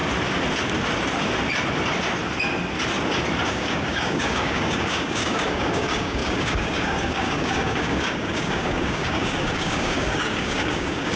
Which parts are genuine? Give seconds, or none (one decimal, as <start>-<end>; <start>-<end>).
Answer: 0.0-3.5